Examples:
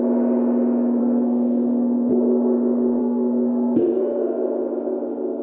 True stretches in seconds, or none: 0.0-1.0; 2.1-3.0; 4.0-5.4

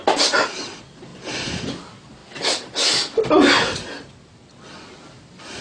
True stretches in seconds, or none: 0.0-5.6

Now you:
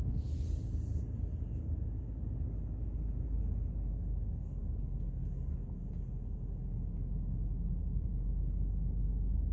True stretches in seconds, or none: 0.0-9.5

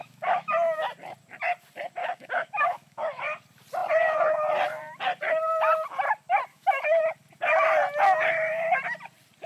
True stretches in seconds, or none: 0.5-2.0; 3.2-6.5; 7.0-9.5

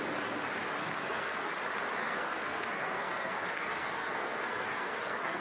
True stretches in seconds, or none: 0.0-0.8; 1.5-2.0

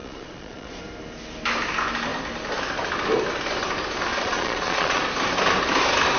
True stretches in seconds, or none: 0.8-4.1; 5.0-6.2

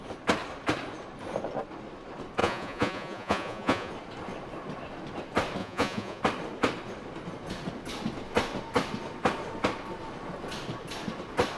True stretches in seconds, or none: 0.0-2.4; 3.9-5.6; 6.2-11.6